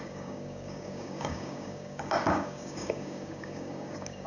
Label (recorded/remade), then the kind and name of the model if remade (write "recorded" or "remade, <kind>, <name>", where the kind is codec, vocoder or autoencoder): remade, codec, DAC